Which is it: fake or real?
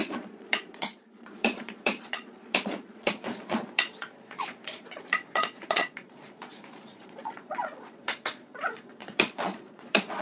fake